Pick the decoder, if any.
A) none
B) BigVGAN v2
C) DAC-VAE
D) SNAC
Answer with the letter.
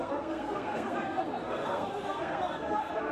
D